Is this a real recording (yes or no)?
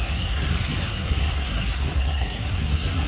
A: no